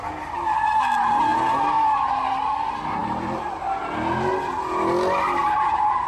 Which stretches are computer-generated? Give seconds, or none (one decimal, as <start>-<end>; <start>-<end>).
3.0-3.8; 5.4-6.1